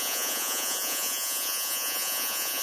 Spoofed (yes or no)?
yes